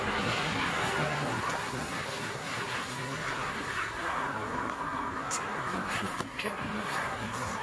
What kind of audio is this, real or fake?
fake